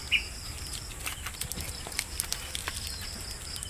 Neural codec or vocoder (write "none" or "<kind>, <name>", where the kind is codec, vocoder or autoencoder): none